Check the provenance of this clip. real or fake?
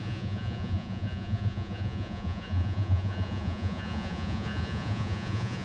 fake